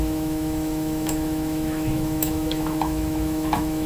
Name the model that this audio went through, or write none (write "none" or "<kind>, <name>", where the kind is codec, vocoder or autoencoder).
autoencoder, DAC-VAE